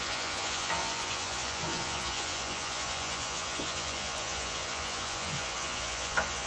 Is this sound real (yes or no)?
no